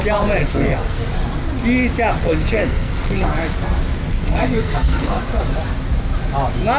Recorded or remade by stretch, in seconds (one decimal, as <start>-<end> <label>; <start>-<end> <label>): 0.0-0.4 recorded; 0.4-1.0 remade; 1.0-2.2 recorded; 2.2-3.3 remade; 3.3-4.1 recorded; 4.1-5.2 remade; 5.2-6.8 recorded